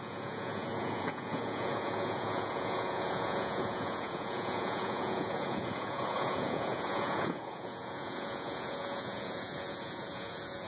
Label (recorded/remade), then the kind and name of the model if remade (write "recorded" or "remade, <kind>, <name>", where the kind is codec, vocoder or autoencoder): remade, vocoder, Vocos